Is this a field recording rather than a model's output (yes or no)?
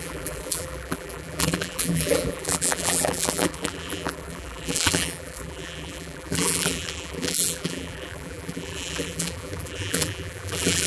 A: no